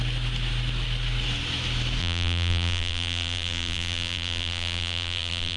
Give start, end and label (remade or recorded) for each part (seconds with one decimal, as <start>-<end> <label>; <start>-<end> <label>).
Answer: 0.0-2.0 recorded; 2.0-5.6 remade